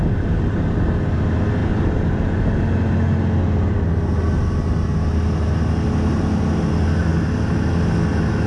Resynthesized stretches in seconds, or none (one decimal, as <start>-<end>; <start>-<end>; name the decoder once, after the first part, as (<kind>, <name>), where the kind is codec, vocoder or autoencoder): none